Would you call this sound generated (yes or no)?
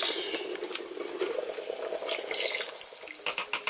no